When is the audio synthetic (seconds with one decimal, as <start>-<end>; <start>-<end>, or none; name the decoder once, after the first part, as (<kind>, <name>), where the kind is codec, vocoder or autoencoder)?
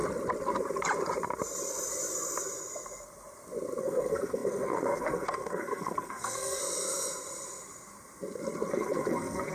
3.8-6.6 (codec, SNAC); 8.7-9.5